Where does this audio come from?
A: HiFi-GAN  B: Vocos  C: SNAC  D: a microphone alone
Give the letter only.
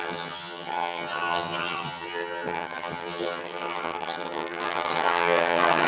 A